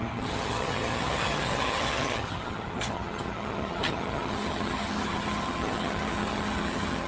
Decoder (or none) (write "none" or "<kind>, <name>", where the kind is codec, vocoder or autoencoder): vocoder, HiFi-GAN